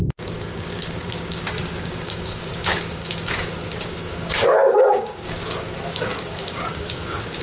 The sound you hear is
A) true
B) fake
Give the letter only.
B